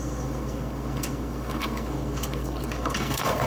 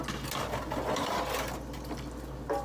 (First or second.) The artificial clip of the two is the first